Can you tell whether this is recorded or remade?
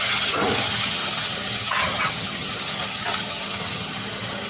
remade